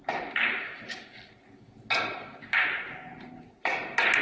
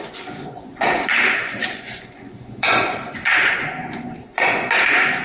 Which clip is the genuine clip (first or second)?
first